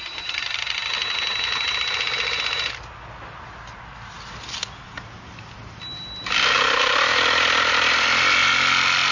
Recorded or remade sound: recorded